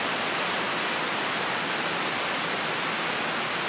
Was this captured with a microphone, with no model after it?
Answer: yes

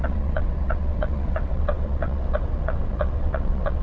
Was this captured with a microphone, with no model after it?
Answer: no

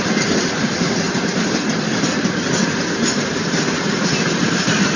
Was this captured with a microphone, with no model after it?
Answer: yes